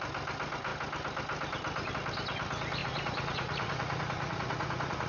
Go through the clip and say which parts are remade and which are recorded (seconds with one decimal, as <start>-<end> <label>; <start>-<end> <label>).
0.0-2.8 recorded; 2.8-5.1 remade